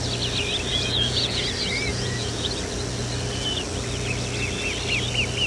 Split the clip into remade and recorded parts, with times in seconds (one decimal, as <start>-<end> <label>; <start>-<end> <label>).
0.0-0.7 recorded; 0.7-1.5 remade; 1.5-1.9 recorded; 1.9-2.5 remade; 2.5-5.5 recorded